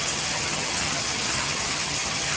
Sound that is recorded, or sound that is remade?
remade